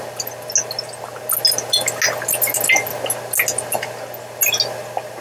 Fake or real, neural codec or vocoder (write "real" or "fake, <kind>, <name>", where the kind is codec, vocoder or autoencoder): real